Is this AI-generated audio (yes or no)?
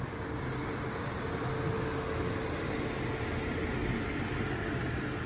no